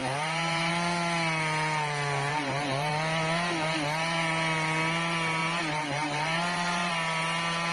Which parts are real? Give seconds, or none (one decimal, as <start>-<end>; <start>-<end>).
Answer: 0.7-2.3; 2.9-5.4; 6.9-7.7